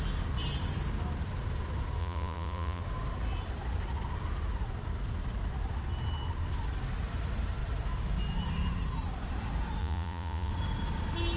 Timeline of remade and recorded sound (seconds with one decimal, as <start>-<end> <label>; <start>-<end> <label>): 0.0-2.0 recorded; 2.0-2.8 remade; 2.8-9.8 recorded; 9.8-10.5 remade; 10.5-11.4 recorded